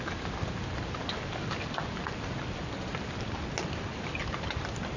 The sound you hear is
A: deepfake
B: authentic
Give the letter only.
B